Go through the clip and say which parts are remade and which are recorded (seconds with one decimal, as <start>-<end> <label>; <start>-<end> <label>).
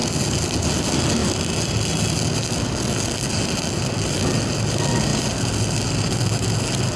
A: 0.0-7.0 recorded